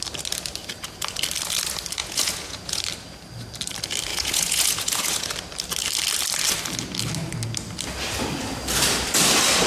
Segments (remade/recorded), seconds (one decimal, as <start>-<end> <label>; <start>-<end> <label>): 0.0-2.0 recorded; 2.0-2.8 remade; 2.8-4.1 recorded; 4.1-5.3 remade; 5.3-9.7 recorded